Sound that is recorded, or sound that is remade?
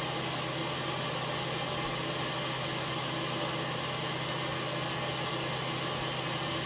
recorded